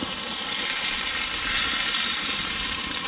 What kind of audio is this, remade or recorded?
recorded